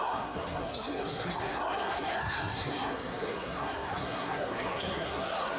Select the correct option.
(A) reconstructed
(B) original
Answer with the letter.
A